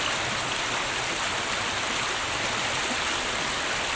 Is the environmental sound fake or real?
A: real